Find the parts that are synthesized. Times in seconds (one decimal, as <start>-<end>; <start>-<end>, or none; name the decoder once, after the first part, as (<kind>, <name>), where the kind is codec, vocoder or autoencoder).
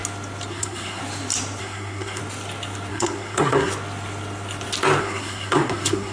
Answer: 0.5-1.0 (codec, SNAC); 1.6-2.2; 2.9-3.7; 5.0-6.1